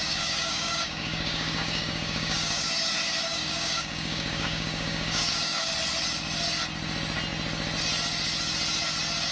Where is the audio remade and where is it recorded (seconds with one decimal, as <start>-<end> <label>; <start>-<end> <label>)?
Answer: 0.0-2.6 remade; 2.6-3.3 recorded; 3.3-5.7 remade; 5.7-9.3 recorded